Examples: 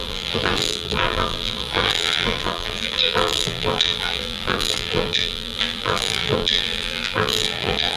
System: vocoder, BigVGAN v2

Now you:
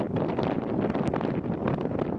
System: none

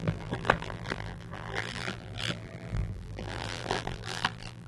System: vocoder, BigVGAN v2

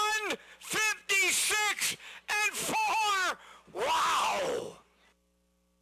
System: none